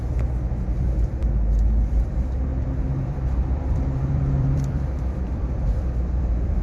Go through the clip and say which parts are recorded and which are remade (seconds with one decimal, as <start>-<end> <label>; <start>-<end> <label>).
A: 0.0-2.5 recorded; 2.5-6.6 remade

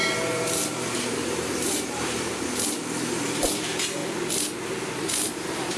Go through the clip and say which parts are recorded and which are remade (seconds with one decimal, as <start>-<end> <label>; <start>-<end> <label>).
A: 0.0-4.0 remade; 4.0-5.0 recorded; 5.0-5.8 remade

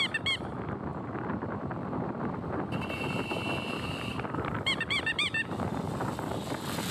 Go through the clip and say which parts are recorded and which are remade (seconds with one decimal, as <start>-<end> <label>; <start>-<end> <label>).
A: 0.0-4.1 recorded; 4.1-5.9 remade; 5.9-6.9 recorded

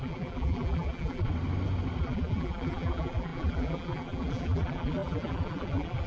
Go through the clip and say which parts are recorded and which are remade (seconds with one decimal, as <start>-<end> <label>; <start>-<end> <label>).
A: 0.0-1.3 remade; 1.3-2.0 recorded; 2.0-6.1 remade

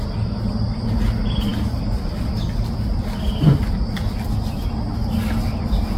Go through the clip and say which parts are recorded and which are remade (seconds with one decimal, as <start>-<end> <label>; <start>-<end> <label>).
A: 0.0-6.0 recorded